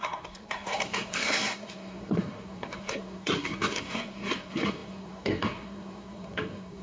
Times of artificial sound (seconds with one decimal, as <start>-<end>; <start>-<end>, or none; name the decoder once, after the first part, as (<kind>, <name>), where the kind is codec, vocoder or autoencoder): 0.0-6.8 (codec, SNAC)